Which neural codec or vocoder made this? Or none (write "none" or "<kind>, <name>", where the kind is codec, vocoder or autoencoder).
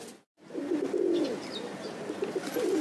none